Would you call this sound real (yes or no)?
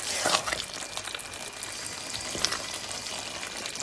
yes